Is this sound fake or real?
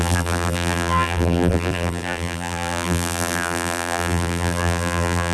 fake